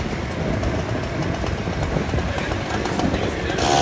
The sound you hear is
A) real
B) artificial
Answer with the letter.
A